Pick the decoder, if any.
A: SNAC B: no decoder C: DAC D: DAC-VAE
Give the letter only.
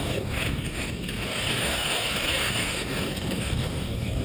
C